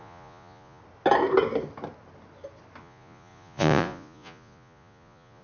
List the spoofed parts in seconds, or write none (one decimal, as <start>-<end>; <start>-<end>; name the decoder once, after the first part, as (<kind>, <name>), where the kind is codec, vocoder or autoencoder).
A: 0.0-0.8 (vocoder, Vocos); 2.8-5.4